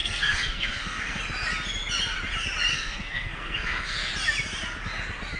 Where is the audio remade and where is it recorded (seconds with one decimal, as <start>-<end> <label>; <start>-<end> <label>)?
0.0-1.2 remade; 1.2-2.7 recorded; 2.7-4.1 remade; 4.1-5.4 recorded